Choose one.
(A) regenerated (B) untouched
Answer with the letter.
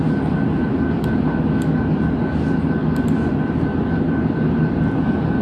B